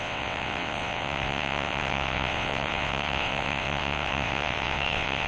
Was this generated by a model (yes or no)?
yes